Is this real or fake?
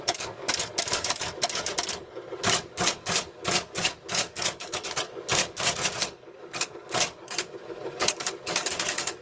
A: fake